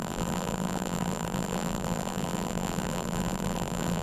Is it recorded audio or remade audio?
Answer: remade